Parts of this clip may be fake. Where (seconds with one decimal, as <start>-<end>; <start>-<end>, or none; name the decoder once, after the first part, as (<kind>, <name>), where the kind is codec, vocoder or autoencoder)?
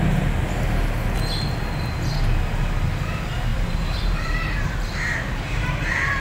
3.5-6.2 (vocoder, BigVGAN v2)